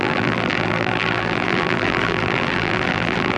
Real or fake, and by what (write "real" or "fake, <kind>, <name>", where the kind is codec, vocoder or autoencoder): fake, vocoder, BigVGAN v2